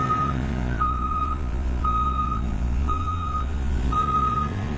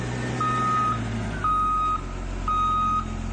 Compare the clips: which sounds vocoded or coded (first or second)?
first